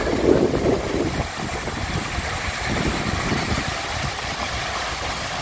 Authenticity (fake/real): real